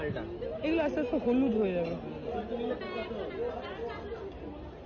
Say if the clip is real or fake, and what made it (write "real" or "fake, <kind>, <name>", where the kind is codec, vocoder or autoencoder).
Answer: real